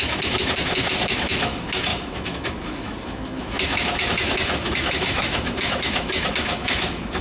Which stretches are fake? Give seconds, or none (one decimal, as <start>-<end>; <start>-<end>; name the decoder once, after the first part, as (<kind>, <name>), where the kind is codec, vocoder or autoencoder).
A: 0.0-7.2 (autoencoder, DAC-VAE)